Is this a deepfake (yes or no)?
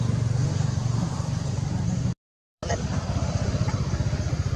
yes